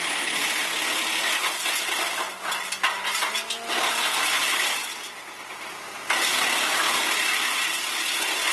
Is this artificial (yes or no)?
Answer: no